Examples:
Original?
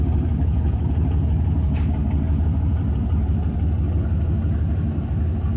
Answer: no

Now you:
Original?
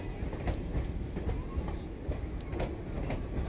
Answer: yes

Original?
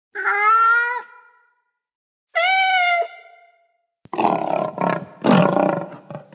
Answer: yes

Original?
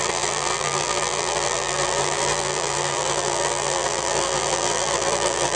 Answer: no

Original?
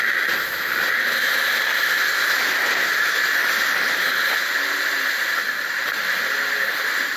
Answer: yes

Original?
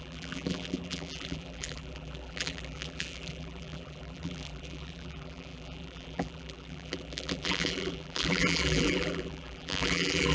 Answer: no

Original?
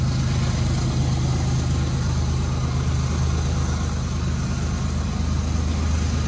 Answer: yes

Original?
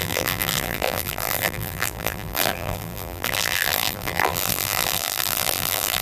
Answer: no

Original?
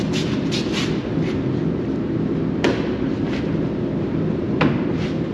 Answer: yes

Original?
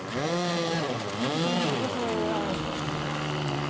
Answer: yes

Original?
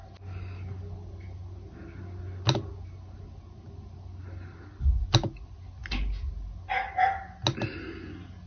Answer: yes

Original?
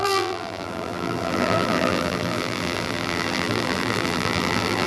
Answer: no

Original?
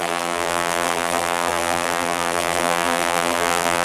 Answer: no